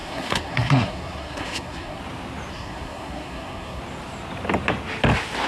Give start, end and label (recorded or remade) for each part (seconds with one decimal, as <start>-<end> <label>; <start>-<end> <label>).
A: 0.0-2.0 remade; 2.0-2.5 recorded; 2.5-3.8 remade; 3.8-5.5 recorded

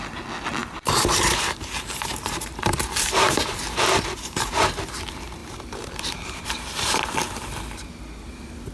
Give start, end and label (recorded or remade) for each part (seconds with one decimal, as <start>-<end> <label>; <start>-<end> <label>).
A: 0.0-0.6 recorded; 0.6-4.7 remade; 4.7-5.4 recorded; 5.4-7.1 remade; 7.1-8.7 recorded

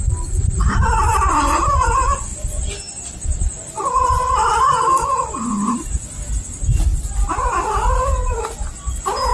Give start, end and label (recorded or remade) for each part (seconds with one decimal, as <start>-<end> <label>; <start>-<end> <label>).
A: 0.0-9.3 recorded

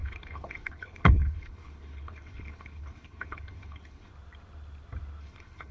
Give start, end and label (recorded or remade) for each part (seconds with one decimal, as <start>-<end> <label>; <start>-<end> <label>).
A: 0.0-4.1 remade; 4.1-5.2 recorded; 5.2-5.7 remade

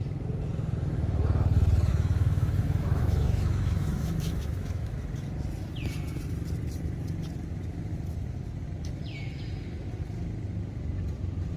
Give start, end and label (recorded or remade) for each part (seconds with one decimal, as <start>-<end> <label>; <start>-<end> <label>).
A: 0.0-1.9 recorded; 1.9-5.0 remade; 5.0-11.6 recorded